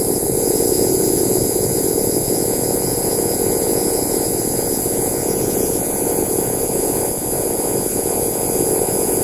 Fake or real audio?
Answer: fake